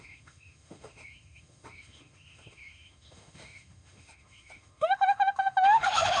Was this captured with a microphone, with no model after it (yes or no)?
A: no